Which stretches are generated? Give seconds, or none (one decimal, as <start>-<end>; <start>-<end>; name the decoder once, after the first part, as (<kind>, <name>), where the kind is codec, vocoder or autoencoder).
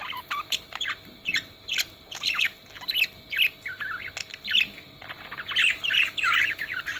0.0-2.5 (vocoder, BigVGAN v2); 5.7-7.0